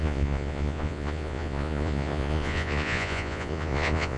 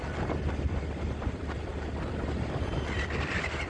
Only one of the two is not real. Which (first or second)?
first